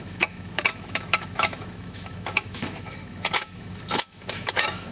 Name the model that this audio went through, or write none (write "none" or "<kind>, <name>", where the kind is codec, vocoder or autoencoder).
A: autoencoder, DAC-VAE